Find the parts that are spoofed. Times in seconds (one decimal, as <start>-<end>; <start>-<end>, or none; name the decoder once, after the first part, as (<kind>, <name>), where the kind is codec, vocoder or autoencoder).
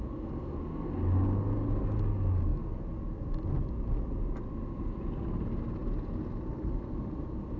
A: none